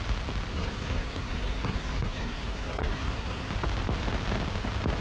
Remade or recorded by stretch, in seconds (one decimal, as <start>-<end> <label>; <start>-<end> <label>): 0.0-0.5 recorded; 0.5-3.5 remade; 3.5-5.0 recorded